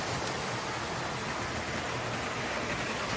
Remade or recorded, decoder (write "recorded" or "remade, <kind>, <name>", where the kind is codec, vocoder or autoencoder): recorded